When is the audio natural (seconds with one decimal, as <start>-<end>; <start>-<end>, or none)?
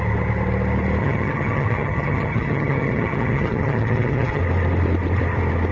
0.0-1.0; 4.4-5.7